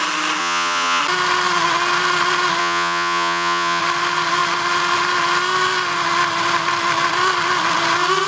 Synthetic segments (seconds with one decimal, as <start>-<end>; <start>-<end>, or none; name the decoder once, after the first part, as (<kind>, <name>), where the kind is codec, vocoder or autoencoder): 0.4-1.0 (vocoder, Vocos); 2.6-3.8